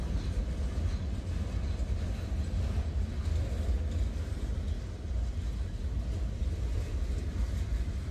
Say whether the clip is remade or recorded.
recorded